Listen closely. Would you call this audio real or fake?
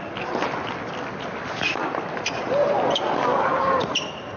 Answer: real